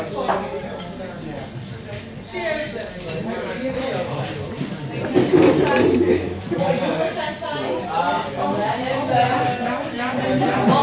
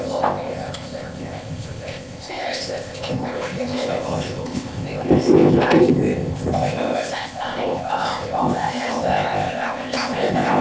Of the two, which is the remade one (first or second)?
second